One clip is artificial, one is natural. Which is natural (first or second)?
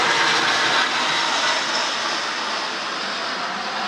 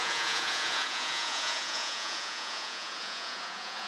first